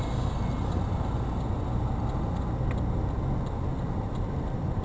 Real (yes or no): yes